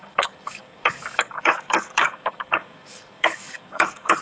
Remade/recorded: remade